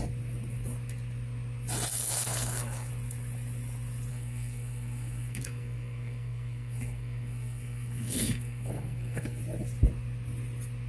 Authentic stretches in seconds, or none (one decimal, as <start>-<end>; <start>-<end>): 0.0-2.0; 2.9-4.1; 9.4-10.9